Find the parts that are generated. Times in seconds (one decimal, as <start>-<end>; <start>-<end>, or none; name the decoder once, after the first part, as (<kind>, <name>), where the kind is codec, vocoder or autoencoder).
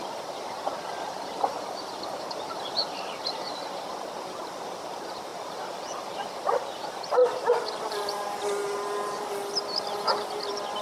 0.0-5.3 (vocoder, BigVGAN v2); 6.3-8.6; 10.4-10.8